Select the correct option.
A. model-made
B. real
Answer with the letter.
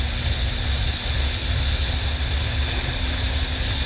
B